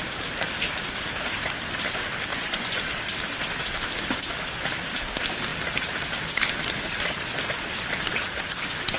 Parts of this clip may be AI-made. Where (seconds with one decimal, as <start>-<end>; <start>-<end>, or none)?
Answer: 2.3-2.8